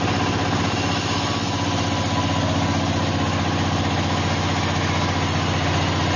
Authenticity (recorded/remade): recorded